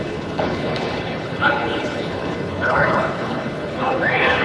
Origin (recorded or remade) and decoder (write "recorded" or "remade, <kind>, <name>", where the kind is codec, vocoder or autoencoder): remade, codec, HILCodec